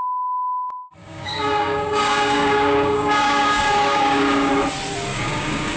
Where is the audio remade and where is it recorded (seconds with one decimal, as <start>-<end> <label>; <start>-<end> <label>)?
0.0-1.0 recorded; 1.0-4.5 remade; 4.5-5.1 recorded; 5.1-5.8 remade